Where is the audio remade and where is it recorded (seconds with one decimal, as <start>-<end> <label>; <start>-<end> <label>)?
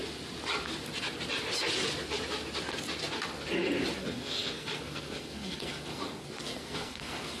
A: 0.0-4.0 recorded; 4.0-7.4 remade